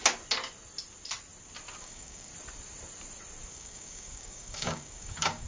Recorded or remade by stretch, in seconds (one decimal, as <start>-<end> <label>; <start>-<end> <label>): 0.0-1.8 recorded; 1.8-2.3 remade; 2.3-3.5 recorded; 3.5-5.5 remade